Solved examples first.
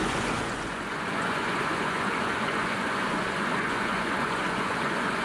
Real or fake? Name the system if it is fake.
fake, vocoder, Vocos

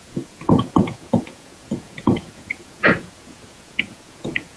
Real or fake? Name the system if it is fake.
fake, vocoder, Vocos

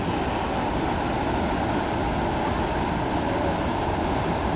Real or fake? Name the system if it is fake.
real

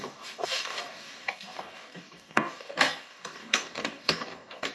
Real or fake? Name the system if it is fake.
fake, codec, DAC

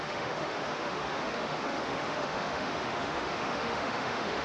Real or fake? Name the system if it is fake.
fake, autoencoder, DAC-VAE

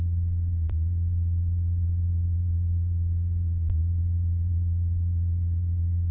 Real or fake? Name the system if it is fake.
fake, vocoder, Vocos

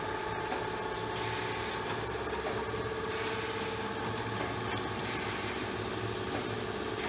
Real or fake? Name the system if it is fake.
real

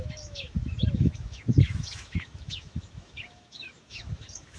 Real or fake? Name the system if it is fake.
fake, autoencoder, DAC-VAE